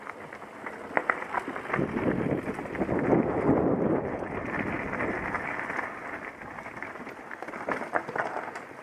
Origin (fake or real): real